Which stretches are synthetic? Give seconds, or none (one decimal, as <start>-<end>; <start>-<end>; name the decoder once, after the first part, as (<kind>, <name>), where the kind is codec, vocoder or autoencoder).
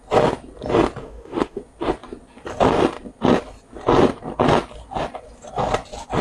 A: 1.0-1.6 (autoencoder, DAC-VAE)